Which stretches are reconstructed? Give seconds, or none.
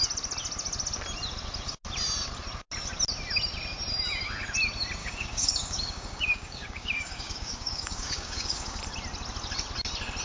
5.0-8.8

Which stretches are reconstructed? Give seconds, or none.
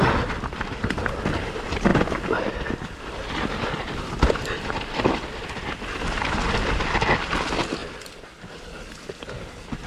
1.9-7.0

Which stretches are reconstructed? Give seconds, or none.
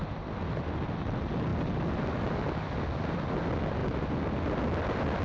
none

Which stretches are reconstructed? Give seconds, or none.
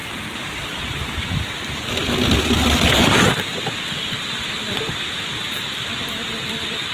0.0-6.9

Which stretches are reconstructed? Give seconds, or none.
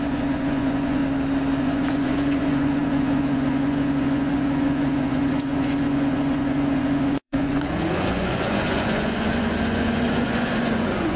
0.0-1.0; 1.6-11.2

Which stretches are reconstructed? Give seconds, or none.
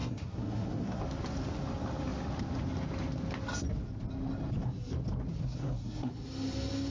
0.0-1.0; 5.4-6.1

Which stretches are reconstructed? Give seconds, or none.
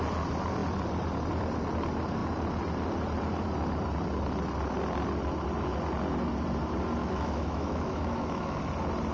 7.0-8.6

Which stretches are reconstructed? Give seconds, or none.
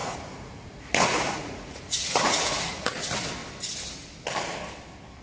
0.0-3.0